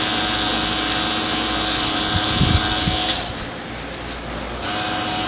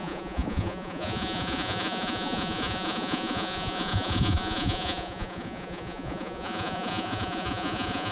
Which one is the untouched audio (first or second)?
first